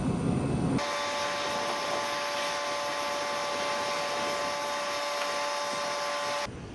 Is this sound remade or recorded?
recorded